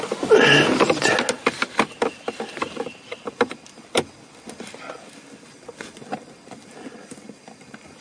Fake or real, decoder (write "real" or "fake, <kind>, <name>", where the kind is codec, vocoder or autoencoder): real